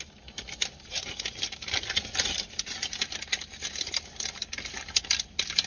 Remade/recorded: recorded